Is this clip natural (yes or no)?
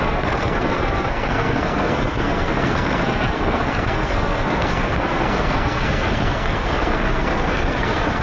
no